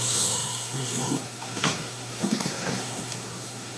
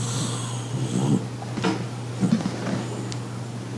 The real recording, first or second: second